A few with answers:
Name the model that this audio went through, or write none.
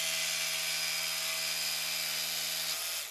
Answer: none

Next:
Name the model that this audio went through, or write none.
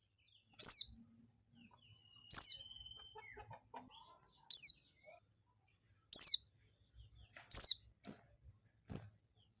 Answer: none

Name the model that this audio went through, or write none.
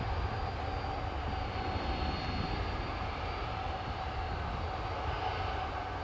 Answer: none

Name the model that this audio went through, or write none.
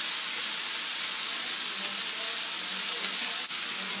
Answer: none